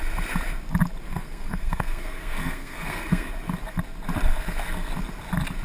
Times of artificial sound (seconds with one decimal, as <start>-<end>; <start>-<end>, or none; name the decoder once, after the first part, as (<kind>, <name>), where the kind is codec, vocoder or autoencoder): 1.1-3.3 (codec, SNAC); 4.3-4.9